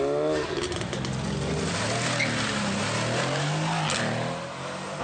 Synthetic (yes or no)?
no